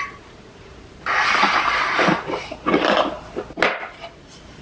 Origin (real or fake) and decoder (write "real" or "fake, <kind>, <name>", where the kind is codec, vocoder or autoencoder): real